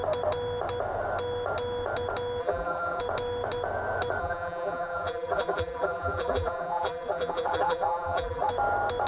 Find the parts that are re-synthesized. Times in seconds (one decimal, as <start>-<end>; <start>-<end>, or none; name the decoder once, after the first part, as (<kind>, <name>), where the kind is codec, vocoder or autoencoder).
2.4-3.0 (vocoder, BigVGAN v2); 4.2-8.5